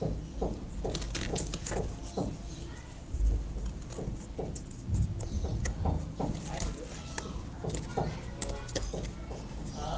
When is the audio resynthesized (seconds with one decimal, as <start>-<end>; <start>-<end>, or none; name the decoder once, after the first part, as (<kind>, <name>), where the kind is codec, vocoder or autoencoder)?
none